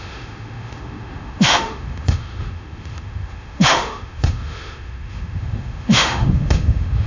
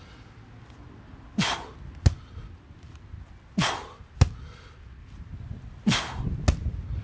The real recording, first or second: second